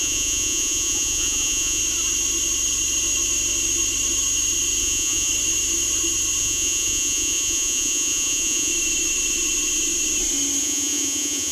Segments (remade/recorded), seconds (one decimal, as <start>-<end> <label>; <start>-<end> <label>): 0.0-1.8 remade; 1.8-4.8 recorded; 4.8-5.3 remade; 5.3-6.4 recorded; 6.4-8.7 remade; 8.7-10.6 recorded; 10.6-11.5 remade